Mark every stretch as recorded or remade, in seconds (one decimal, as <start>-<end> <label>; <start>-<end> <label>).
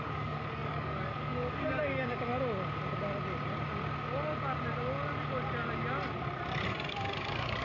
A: 0.0-2.3 remade; 2.3-6.9 recorded; 6.9-7.6 remade